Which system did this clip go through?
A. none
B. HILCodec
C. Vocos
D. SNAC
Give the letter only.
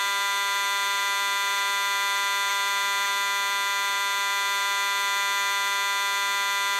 A